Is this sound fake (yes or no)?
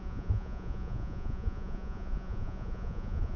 yes